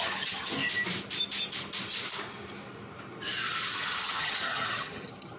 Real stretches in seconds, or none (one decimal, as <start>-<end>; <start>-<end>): 0.6-3.8